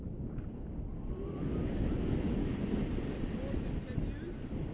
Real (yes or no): yes